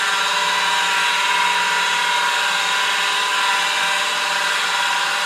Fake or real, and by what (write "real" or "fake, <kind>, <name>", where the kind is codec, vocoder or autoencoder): real